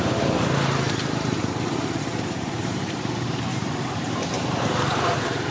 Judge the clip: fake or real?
fake